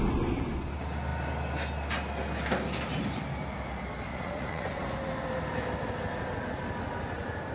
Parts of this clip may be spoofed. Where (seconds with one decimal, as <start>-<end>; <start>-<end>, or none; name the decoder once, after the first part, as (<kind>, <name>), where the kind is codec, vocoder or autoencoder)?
4.1-4.9 (vocoder, Vocos)